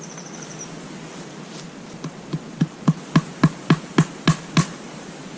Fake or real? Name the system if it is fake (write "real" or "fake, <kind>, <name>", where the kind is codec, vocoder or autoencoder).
real